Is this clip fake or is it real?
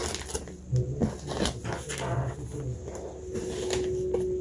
real